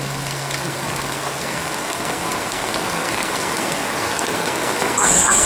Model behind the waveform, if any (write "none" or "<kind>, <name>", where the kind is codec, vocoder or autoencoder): codec, SNAC